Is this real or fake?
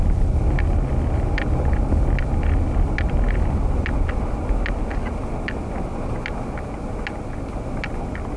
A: real